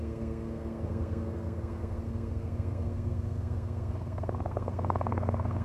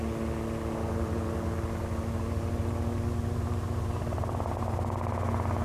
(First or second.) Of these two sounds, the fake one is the first